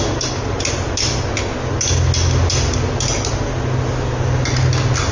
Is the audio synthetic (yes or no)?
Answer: no